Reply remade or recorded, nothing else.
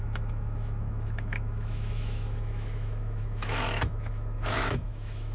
remade